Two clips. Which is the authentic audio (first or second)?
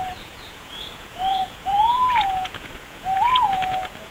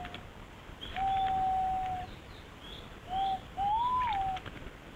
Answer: second